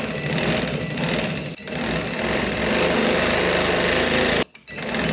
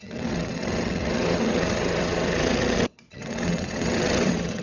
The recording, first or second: first